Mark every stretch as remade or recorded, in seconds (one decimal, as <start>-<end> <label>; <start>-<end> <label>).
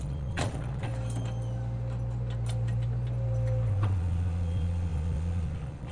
0.0-0.9 remade; 0.9-3.7 recorded; 3.7-5.9 remade